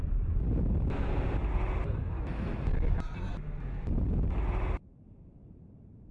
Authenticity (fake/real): real